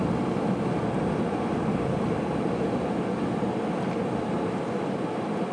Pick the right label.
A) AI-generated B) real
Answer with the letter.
B